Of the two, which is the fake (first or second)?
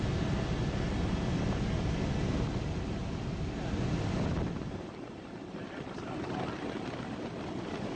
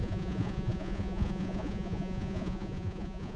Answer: second